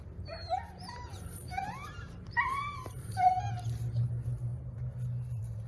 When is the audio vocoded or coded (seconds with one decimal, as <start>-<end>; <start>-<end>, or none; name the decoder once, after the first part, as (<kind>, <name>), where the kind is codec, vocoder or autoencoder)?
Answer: 0.0-4.5 (vocoder, BigVGAN v2); 5.3-5.7